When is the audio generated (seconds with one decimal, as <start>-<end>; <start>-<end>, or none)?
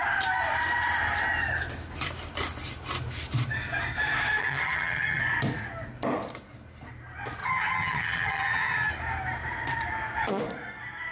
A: 4.4-5.2; 7.4-8.9